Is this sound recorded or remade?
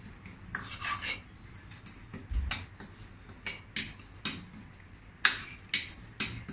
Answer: recorded